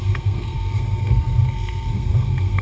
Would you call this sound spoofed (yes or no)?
yes